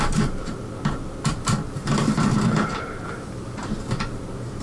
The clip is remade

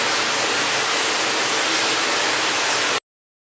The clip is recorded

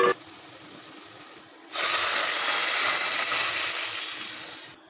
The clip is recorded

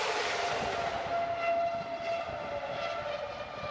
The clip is recorded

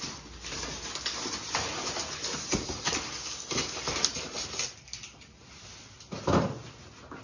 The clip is recorded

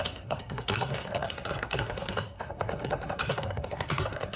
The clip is remade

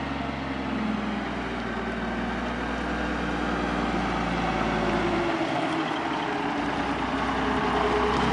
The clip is recorded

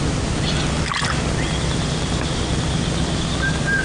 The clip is recorded